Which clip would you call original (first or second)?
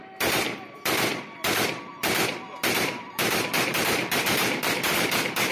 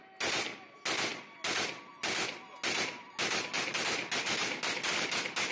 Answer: second